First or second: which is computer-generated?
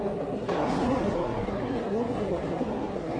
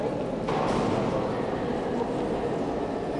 first